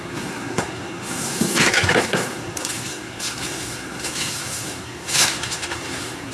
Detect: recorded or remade remade